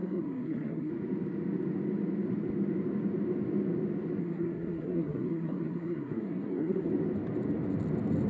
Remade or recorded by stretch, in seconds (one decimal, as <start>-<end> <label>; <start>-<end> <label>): 0.0-0.9 remade; 0.9-4.2 recorded; 4.2-6.9 remade; 6.9-8.3 recorded